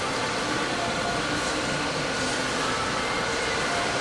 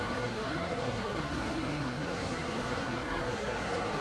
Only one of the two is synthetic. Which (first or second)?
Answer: second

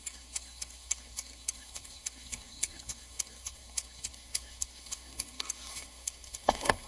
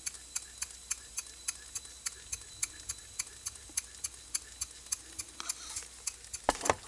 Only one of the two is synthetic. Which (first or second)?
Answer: first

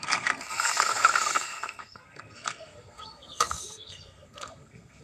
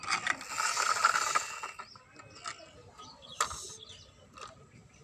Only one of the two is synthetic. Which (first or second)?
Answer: first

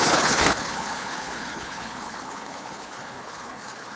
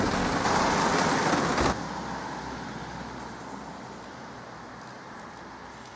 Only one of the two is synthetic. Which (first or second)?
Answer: first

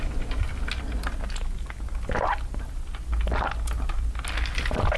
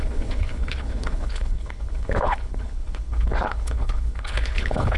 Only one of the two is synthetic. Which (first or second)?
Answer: second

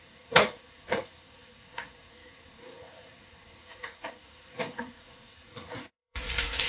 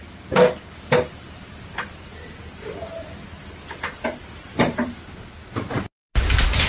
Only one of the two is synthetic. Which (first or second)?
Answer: first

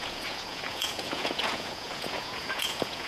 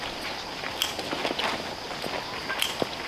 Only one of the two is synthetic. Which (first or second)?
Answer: first